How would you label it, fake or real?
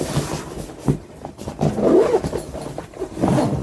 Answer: real